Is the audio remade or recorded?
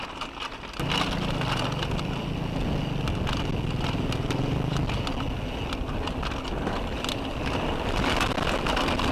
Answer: recorded